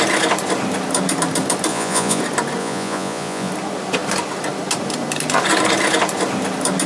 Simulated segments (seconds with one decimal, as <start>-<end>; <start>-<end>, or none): 1.7-2.2; 2.6-3.5